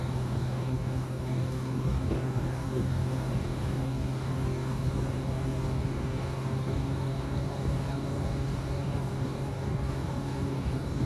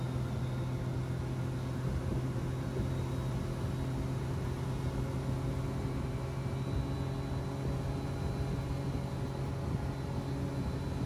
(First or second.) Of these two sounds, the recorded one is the second